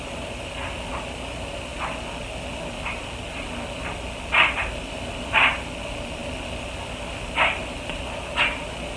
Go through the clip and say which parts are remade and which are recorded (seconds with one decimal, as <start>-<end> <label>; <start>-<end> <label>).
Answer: 0.0-9.0 recorded